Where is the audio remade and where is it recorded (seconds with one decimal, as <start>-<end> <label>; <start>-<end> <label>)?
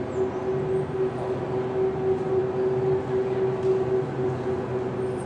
0.0-5.3 recorded